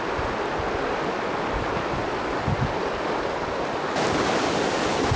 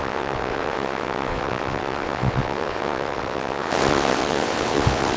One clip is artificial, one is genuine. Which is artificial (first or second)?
second